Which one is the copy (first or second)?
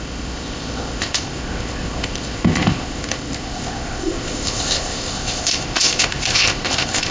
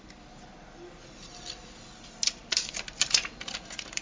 first